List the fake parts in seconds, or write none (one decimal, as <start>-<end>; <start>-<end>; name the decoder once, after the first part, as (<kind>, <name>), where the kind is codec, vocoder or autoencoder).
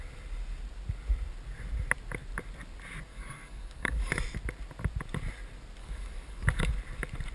3.1-4.2 (codec, DAC); 5.8-6.7